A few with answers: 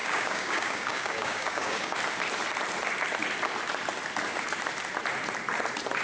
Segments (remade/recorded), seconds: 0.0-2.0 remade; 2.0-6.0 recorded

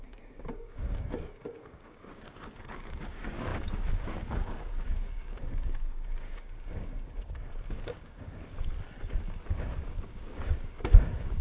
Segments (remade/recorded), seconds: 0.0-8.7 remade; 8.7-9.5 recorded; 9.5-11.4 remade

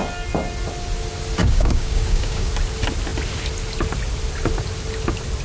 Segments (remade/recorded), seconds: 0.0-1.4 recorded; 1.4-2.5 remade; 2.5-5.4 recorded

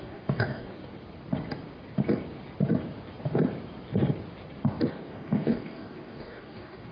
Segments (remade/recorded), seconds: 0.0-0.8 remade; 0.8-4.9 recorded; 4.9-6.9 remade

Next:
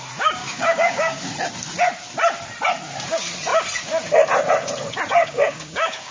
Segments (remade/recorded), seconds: 0.0-0.4 recorded; 0.4-1.2 remade; 1.2-5.2 recorded; 5.2-6.1 remade

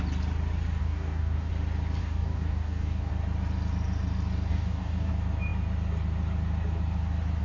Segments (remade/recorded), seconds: 0.0-0.8 recorded; 0.8-1.5 remade; 1.5-2.0 recorded; 2.0-3.1 remade; 3.1-4.5 recorded; 4.5-5.1 remade; 5.1-7.4 recorded

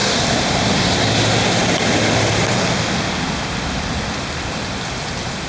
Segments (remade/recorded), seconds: 0.0-5.5 recorded